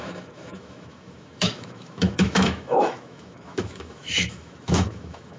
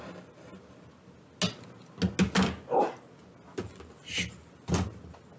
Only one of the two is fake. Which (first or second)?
first